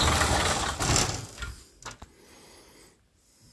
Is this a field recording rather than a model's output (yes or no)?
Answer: yes